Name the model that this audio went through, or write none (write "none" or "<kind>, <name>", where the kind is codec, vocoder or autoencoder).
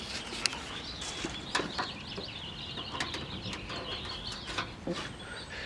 none